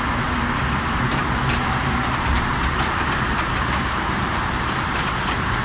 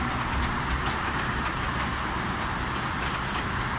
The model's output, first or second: first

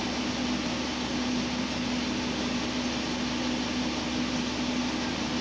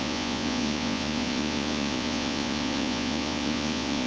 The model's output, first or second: second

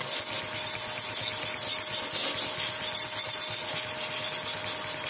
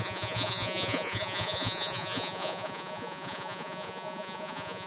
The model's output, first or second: second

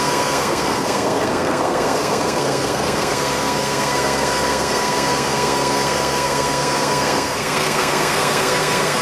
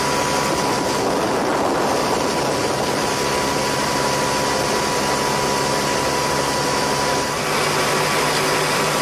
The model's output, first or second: first